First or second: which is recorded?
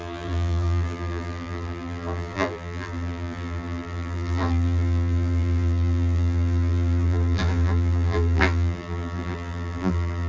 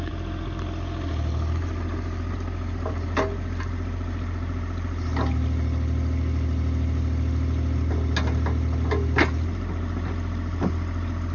second